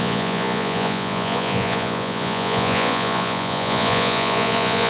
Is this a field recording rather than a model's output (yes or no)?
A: no